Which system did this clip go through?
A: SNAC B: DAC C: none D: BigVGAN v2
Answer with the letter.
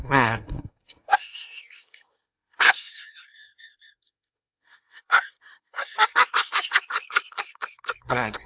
A